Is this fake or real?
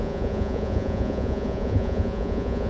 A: fake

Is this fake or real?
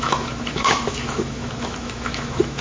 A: fake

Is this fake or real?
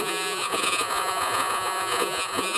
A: fake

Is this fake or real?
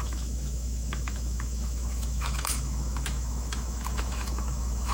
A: fake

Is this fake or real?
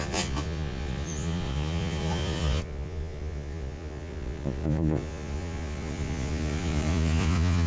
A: fake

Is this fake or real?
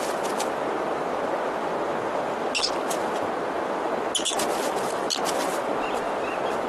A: real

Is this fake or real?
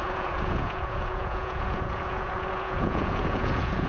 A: fake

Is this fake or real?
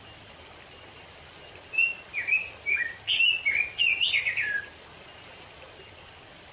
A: real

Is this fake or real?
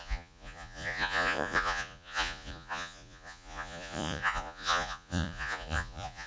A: fake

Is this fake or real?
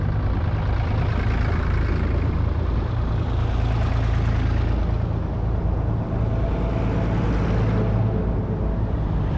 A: real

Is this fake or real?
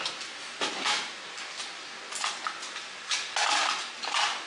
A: real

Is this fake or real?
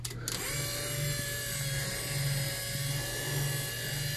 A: real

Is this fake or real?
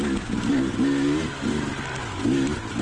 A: real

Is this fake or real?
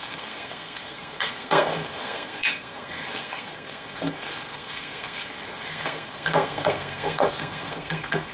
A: fake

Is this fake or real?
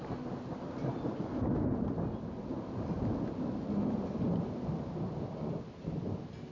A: real